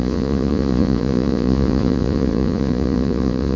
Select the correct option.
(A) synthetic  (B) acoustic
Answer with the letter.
A